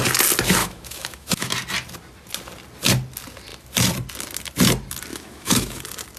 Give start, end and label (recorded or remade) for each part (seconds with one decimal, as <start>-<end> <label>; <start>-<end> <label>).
0.0-0.6 recorded; 0.6-1.5 remade; 1.5-5.1 recorded; 5.1-5.8 remade; 5.8-6.2 recorded